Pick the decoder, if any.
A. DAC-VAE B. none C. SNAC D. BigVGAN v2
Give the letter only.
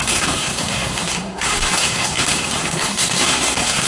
C